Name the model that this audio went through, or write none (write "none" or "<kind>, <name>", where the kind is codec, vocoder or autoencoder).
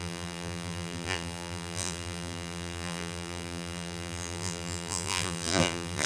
vocoder, BigVGAN v2